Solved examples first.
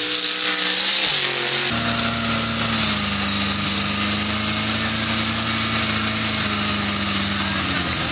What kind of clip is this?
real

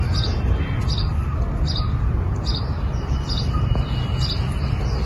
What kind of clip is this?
real